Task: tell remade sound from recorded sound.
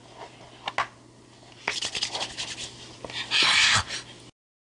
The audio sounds recorded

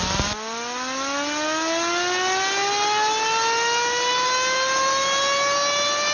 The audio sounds recorded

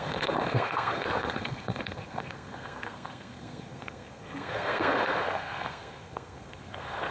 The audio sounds remade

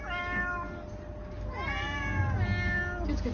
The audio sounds recorded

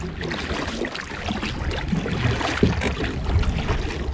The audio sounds recorded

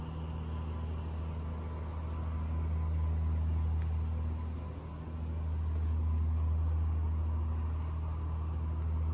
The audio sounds recorded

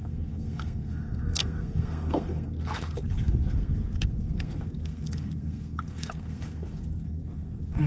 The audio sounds remade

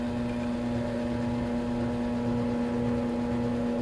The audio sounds recorded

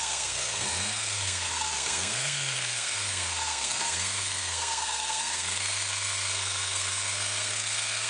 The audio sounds remade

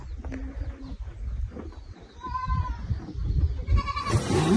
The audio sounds recorded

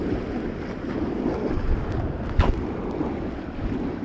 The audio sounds recorded